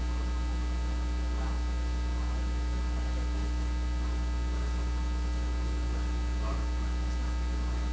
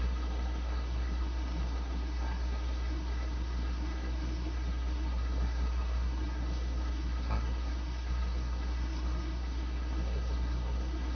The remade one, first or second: second